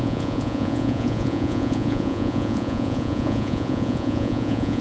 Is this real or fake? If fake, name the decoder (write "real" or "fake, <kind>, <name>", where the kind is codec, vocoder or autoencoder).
fake, vocoder, Vocos